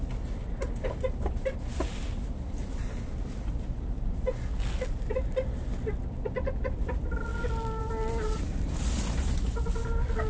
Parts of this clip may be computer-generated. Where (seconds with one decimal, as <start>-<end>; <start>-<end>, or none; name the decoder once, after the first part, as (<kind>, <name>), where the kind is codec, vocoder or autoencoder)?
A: none